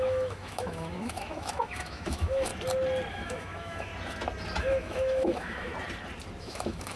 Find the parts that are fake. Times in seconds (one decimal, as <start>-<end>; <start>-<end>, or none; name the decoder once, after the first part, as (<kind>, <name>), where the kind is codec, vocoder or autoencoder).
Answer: 0.0-2.5 (autoencoder, DAC-VAE); 3.1-3.9; 4.6-5.7; 6.4-7.0

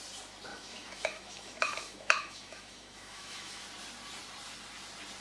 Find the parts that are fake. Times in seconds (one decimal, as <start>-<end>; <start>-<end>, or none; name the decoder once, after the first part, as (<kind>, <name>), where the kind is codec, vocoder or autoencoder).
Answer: 0.5-3.6 (autoencoder, DAC-VAE)

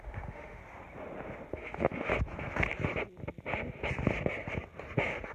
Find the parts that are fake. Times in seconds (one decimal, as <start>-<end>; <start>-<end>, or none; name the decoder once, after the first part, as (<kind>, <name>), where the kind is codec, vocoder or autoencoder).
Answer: 0.0-0.6 (autoencoder, DAC-VAE); 1.5-2.1

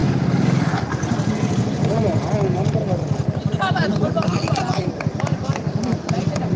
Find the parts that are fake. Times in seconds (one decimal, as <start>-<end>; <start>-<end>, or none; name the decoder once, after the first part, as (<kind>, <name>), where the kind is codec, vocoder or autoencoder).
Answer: none

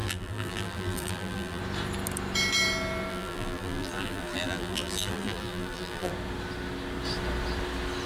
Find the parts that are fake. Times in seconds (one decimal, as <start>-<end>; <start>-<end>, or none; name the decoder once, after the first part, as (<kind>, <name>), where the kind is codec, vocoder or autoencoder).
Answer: 0.0-1.6 (vocoder, BigVGAN v2); 3.1-6.1

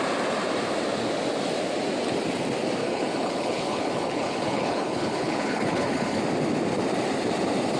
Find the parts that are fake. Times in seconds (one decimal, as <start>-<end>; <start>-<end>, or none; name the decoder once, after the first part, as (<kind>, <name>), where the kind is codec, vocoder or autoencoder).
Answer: 2.8-6.2 (codec, HILCodec)

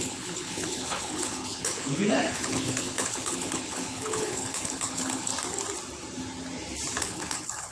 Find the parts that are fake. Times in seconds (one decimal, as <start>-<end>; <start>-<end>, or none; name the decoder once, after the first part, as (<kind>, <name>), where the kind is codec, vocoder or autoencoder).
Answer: 0.0-5.3 (codec, HILCodec); 7.0-7.7